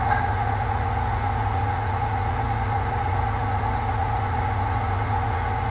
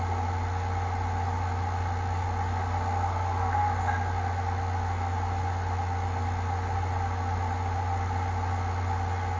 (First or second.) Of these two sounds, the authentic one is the second